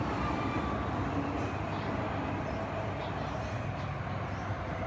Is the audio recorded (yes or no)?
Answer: yes